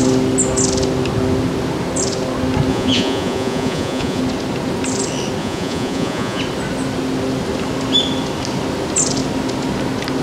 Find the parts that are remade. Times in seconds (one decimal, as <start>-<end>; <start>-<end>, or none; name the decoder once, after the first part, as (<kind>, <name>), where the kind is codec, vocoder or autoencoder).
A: 2.7-4.2 (vocoder, Vocos); 5.4-6.4